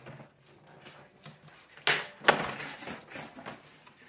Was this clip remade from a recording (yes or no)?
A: no